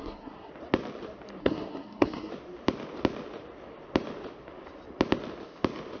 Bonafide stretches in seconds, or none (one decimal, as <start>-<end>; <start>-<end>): 0.5-1.4; 2.3-6.0